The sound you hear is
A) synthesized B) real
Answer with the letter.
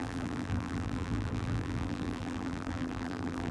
A